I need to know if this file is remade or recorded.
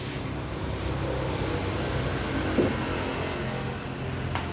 recorded